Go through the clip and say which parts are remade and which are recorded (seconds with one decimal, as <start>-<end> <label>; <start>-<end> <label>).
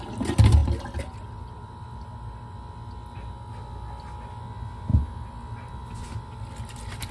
0.0-7.1 recorded